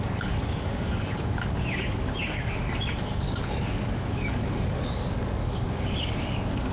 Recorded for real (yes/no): no